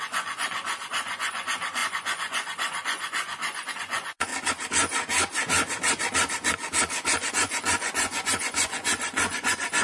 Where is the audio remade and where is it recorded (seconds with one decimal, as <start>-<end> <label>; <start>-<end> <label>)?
0.0-4.3 remade; 4.3-7.3 recorded; 7.3-9.8 remade